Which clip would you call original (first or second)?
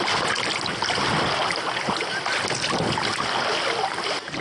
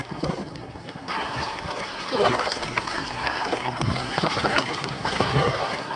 first